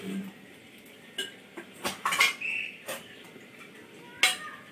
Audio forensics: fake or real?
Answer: real